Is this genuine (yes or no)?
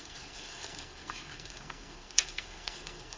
no